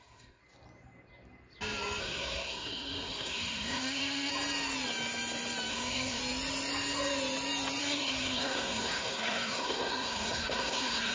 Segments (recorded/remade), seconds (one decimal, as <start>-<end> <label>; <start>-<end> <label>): 0.0-0.4 remade; 0.4-2.0 recorded; 2.0-4.3 remade; 4.3-5.7 recorded; 5.7-6.2 remade; 6.2-7.8 recorded; 7.8-11.1 remade